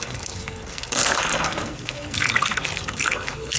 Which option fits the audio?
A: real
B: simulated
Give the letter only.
B